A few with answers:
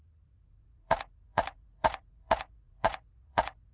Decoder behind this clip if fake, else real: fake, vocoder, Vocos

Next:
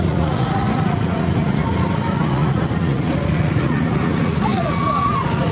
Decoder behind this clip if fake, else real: fake, vocoder, Vocos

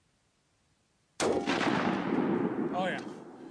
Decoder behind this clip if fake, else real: real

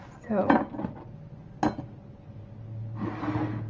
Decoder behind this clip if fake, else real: real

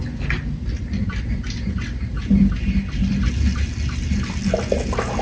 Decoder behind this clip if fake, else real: real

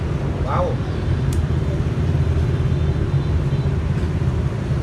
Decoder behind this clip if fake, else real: real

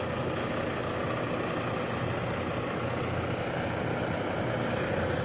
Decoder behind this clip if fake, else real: real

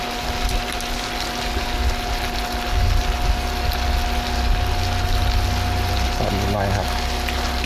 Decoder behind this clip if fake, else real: real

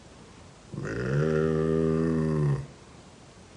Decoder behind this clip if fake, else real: real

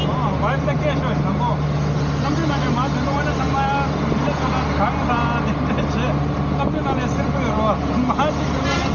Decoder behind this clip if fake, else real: real